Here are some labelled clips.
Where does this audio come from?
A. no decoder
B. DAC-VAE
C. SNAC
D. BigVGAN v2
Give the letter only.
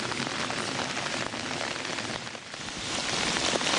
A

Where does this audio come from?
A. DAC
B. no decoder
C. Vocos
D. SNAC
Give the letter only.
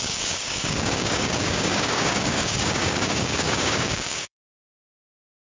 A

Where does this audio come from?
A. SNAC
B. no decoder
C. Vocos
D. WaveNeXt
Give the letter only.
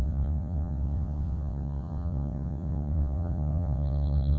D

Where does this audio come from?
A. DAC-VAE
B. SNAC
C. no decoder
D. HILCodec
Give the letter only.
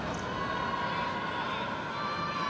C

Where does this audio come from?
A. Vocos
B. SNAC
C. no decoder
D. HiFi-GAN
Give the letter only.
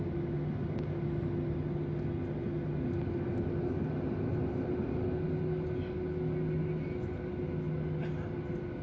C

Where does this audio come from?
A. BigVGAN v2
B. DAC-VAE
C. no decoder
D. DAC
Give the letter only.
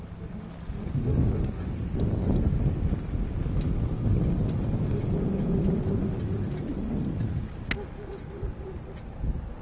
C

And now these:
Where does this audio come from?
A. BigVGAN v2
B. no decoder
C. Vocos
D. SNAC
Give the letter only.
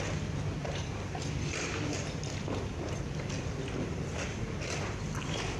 B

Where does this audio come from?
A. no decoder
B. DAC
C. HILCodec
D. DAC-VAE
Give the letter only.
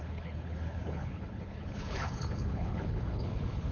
C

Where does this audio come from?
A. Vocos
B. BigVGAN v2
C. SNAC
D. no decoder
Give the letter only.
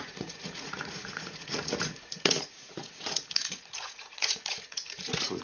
A